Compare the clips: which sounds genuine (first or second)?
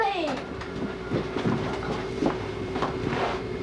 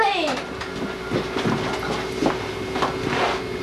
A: second